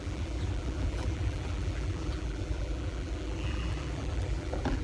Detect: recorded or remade remade